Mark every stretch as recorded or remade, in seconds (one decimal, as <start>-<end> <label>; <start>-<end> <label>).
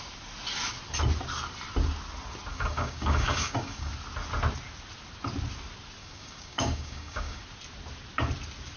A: 0.0-2.5 recorded; 2.5-3.9 remade; 3.9-6.0 recorded; 6.0-7.4 remade; 7.4-8.8 recorded